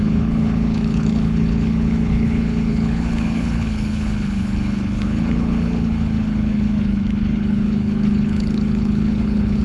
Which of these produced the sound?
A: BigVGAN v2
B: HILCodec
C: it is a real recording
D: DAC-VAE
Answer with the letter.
B